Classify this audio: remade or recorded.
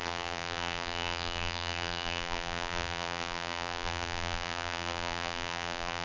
remade